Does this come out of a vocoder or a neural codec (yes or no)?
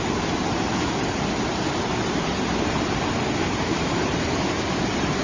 no